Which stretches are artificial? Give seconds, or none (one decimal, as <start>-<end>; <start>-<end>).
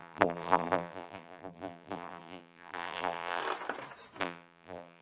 0.0-3.4; 4.2-5.0